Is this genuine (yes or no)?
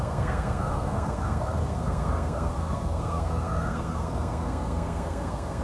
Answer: no